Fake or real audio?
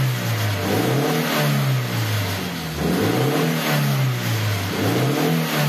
real